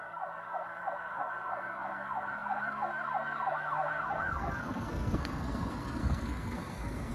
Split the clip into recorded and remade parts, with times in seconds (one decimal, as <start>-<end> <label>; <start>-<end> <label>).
0.0-7.1 remade